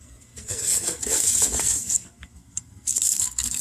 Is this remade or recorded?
remade